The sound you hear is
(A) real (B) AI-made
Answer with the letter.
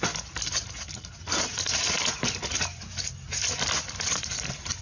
A